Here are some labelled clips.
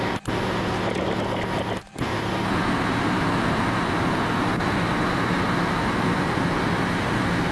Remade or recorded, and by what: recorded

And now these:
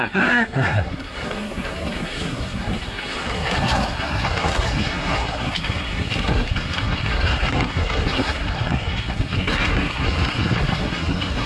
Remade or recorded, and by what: remade, codec, SNAC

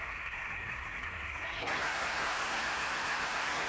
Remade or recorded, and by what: remade, codec, SNAC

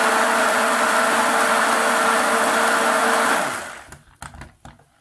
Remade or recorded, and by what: recorded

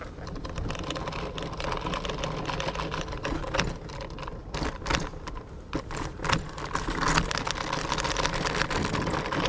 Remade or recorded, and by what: recorded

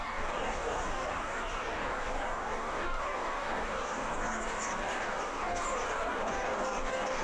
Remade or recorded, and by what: remade, codec, DAC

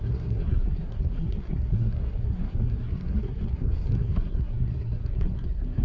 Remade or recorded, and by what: remade, codec, SNAC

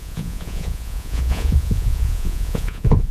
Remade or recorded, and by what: remade, vocoder, Vocos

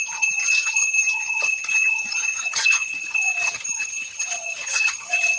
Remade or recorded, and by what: remade, vocoder, HiFi-GAN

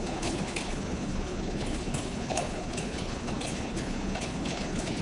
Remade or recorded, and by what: remade, codec, HILCodec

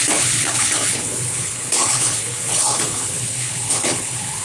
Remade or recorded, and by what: remade, codec, HILCodec